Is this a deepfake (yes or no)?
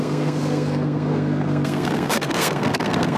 yes